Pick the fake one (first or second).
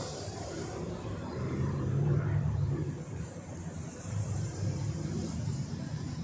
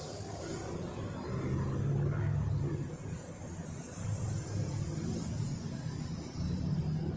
first